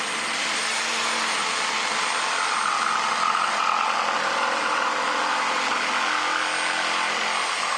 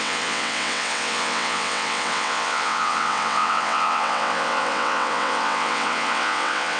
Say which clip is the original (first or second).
first